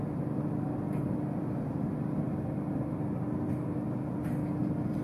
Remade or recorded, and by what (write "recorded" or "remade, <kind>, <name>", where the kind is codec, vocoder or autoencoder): recorded